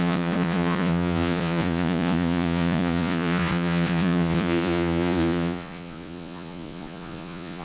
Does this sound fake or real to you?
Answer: fake